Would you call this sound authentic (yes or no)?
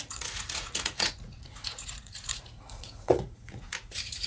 no